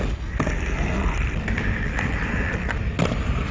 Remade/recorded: recorded